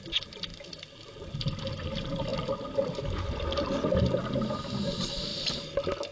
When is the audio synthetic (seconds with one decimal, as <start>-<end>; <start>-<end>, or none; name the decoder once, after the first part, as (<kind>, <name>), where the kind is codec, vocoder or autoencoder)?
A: none